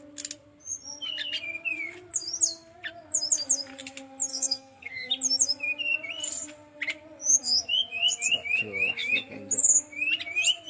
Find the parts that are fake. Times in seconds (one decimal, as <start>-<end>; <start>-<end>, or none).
4.3-5.1